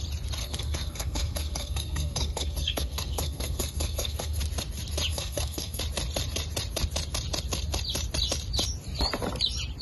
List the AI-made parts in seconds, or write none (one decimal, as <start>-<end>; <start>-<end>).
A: 0.4-4.4; 5.1-5.8